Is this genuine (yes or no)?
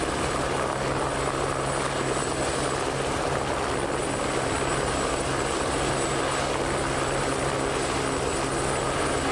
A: yes